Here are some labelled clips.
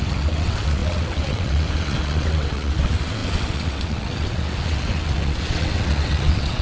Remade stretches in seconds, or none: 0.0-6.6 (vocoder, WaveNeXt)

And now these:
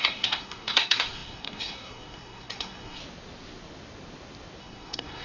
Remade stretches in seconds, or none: 0.0-3.0 (codec, SNAC); 4.6-5.2

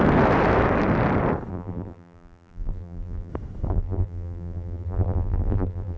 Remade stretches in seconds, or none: 1.5-3.3 (vocoder, BigVGAN v2); 3.7-6.0

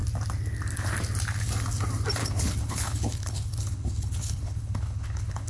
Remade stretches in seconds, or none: 2.2-5.5 (codec, HILCodec)

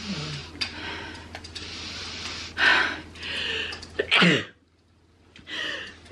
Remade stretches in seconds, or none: none

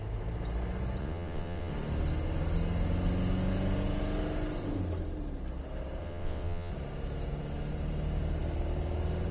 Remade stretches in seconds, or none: 1.0-1.7 (vocoder, WaveNeXt); 6.0-6.7

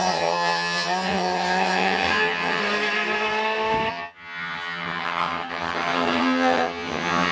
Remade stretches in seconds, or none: 0.0-2.6 (vocoder, HiFi-GAN); 3.9-7.3